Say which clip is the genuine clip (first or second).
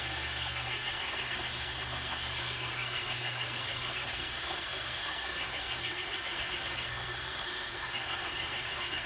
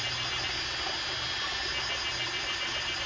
second